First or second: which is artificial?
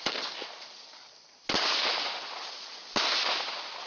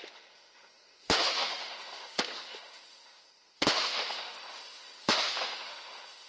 second